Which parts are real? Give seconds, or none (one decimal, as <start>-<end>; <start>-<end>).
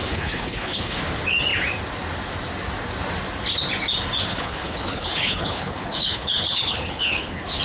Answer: 1.0-4.3